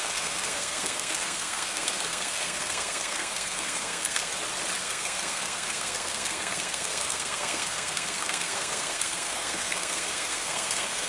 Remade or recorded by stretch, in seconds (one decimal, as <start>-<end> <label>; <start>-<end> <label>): 0.0-4.3 remade; 4.3-4.8 recorded; 4.8-11.1 remade

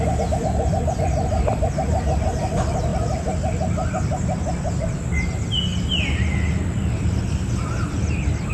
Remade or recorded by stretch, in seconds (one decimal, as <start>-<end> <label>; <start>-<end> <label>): 0.0-8.5 recorded